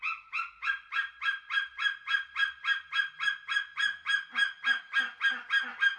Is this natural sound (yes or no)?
yes